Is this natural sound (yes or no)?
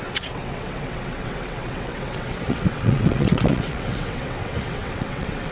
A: no